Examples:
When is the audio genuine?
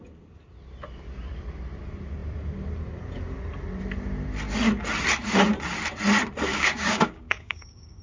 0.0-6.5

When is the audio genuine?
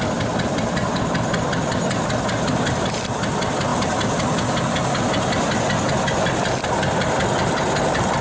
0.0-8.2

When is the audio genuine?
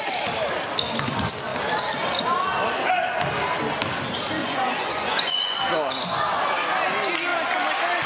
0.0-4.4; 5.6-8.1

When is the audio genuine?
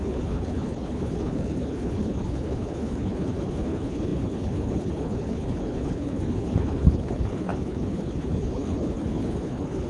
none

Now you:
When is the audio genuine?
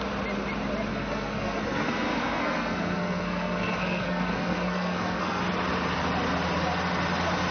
0.0-0.9; 5.4-7.5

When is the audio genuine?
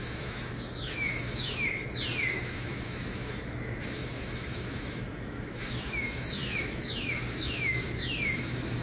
1.8-2.3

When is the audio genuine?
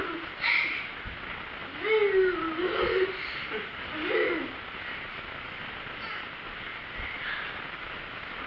0.0-8.5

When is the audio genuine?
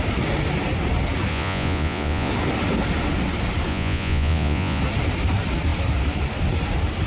0.0-1.3; 2.3-3.7; 4.8-7.1